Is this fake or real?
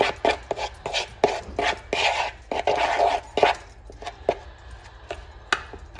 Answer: real